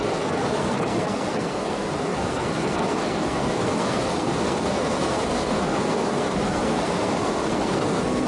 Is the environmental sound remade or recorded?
remade